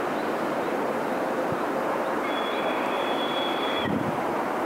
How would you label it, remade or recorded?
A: remade